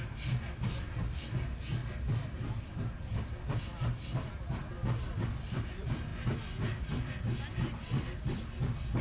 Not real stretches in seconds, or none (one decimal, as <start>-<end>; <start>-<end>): none